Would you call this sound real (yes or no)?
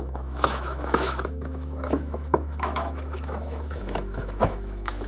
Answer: no